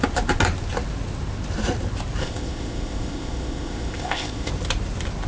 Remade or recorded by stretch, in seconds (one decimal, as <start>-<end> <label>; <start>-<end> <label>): 0.0-2.2 recorded; 2.2-4.5 remade; 4.5-5.3 recorded